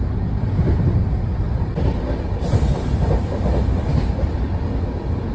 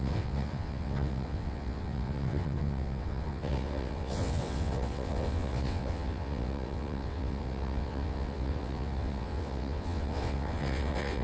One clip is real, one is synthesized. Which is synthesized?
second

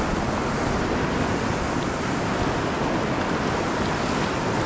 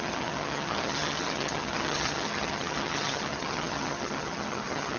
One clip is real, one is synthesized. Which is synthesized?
second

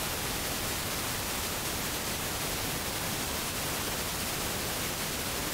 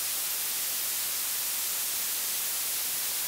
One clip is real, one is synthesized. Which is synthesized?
first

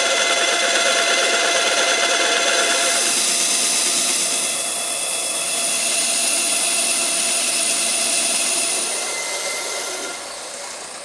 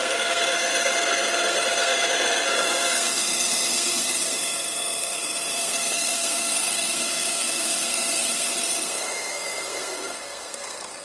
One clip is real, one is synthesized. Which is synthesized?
second